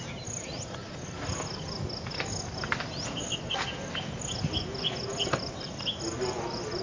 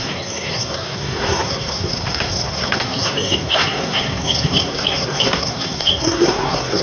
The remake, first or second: second